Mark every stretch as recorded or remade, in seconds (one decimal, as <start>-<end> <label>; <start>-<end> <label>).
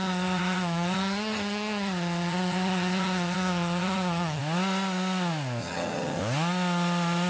0.0-4.4 remade; 4.4-5.6 recorded; 5.6-6.2 remade; 6.2-7.3 recorded